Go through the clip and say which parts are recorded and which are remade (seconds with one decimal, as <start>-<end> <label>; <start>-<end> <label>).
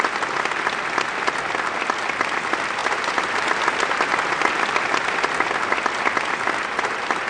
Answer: 0.0-7.3 recorded